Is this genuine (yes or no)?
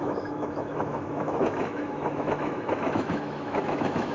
no